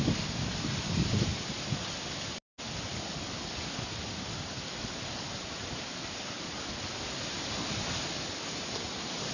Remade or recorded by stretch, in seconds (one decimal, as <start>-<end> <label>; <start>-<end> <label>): 0.0-9.3 recorded